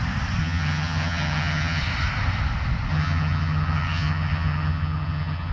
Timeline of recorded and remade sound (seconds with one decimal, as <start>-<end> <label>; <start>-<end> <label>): 0.0-0.4 recorded; 0.4-1.8 remade; 1.8-2.9 recorded; 2.9-5.5 remade